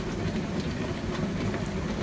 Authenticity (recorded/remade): recorded